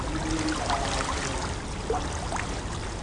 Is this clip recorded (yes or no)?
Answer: yes